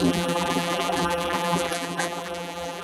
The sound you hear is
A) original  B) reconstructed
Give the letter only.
B